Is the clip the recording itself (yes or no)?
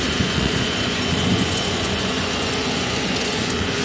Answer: no